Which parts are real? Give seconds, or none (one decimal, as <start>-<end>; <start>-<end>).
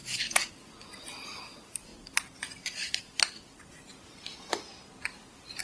0.0-5.6